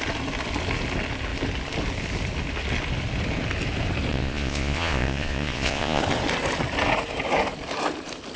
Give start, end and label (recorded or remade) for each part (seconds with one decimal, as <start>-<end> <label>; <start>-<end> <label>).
0.0-4.1 recorded; 4.1-6.0 remade; 6.0-8.4 recorded